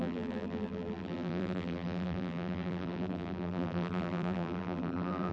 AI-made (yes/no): yes